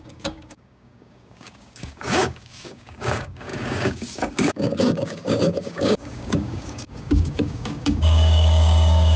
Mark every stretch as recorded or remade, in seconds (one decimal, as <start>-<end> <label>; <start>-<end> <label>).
0.0-9.2 remade